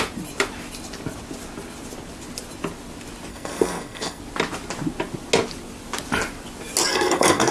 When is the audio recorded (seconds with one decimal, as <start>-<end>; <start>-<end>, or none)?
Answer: 0.0-3.3; 4.2-6.9

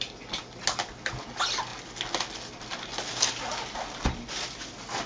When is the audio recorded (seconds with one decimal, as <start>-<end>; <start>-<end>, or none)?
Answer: 0.0-5.1

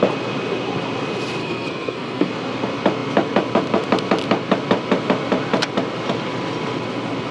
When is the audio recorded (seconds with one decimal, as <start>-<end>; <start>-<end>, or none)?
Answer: 0.0-1.4; 2.3-7.3

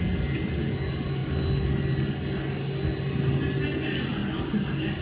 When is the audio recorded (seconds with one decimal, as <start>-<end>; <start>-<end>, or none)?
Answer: 0.0-5.0

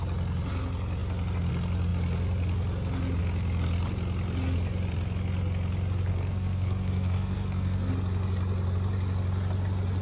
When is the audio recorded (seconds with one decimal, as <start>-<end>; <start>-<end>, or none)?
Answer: 0.0-6.1; 7.9-10.0

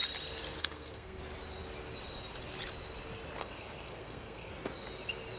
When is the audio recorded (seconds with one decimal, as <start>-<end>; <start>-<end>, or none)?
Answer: 0.0-0.6; 1.2-3.4; 4.5-5.4

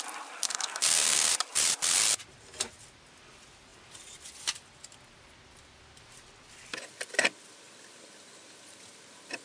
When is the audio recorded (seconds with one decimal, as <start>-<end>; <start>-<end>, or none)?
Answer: 0.0-0.4; 1.3-9.4